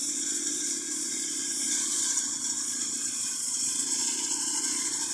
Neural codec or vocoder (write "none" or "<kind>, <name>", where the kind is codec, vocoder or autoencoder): vocoder, Vocos